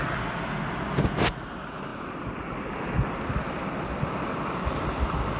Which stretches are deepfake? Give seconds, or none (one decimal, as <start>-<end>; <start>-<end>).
none